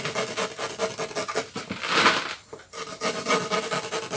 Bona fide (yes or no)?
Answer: yes